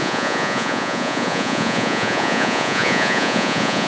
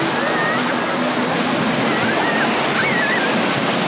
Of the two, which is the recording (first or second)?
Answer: second